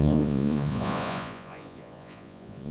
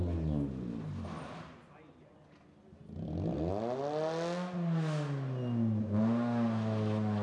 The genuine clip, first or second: second